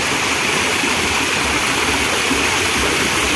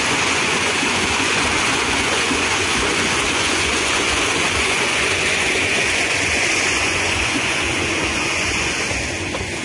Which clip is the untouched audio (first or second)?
first